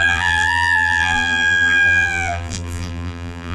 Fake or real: fake